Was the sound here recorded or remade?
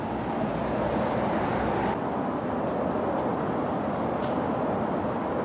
recorded